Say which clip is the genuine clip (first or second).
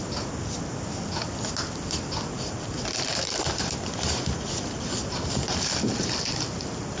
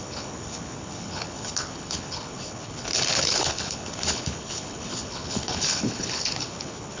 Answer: first